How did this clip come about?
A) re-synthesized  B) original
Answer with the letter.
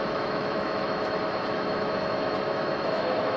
A